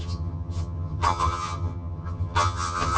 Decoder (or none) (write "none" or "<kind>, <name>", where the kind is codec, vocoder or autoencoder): vocoder, HiFi-GAN